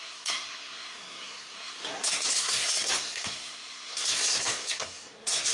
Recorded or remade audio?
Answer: remade